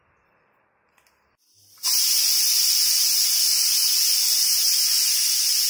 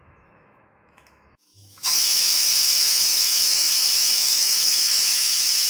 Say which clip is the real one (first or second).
first